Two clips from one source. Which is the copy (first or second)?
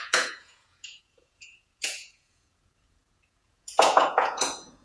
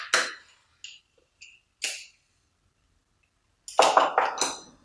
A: first